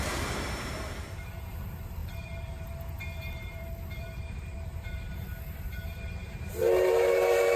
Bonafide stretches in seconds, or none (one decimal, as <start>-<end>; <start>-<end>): none